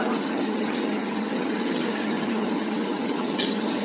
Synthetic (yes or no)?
yes